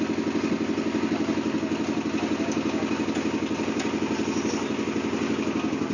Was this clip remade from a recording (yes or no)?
no